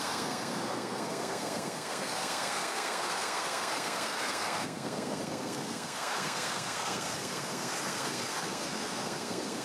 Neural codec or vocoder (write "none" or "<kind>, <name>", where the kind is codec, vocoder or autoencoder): codec, SNAC